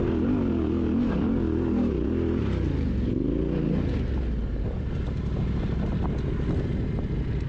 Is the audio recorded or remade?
recorded